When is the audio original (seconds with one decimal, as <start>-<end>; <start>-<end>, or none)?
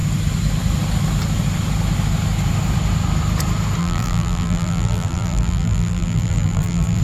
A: 0.0-3.8